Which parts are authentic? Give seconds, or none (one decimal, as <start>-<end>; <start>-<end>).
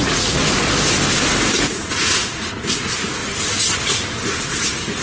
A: 0.4-1.5; 3.2-4.4